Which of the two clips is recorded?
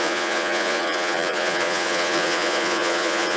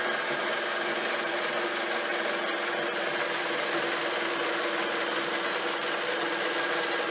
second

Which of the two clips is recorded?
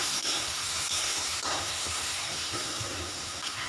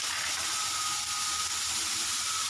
second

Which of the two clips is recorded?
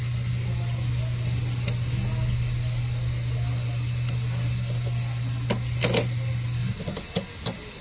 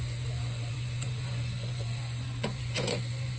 first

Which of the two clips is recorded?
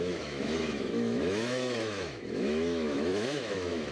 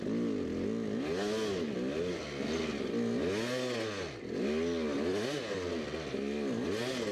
second